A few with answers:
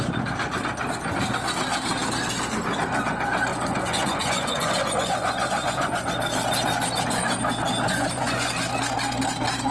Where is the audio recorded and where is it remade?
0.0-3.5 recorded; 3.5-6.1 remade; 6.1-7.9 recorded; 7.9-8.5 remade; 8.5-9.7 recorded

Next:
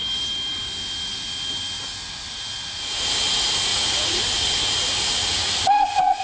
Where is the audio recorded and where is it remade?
0.0-3.7 recorded; 3.7-4.2 remade; 4.2-5.2 recorded; 5.2-6.2 remade

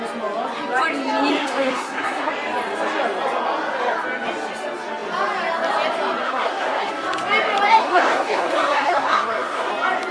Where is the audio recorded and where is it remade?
0.0-1.4 recorded; 1.4-2.3 remade; 2.3-6.2 recorded; 6.2-6.9 remade; 6.9-7.8 recorded; 7.8-9.7 remade; 9.7-10.1 recorded

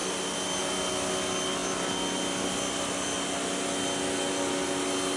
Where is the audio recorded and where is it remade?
0.0-5.2 recorded

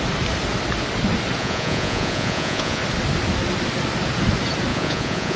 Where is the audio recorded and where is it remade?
0.0-1.4 recorded; 1.4-2.8 remade; 2.8-4.7 recorded; 4.7-5.4 remade

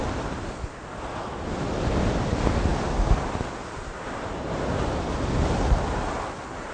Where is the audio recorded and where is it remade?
0.0-6.7 recorded